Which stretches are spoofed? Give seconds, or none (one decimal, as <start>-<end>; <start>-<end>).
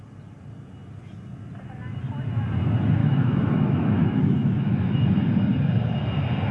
3.0-5.2